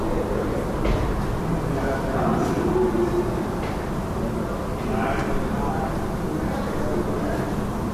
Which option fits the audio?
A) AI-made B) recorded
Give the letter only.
B